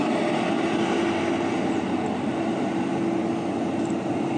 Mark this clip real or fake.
real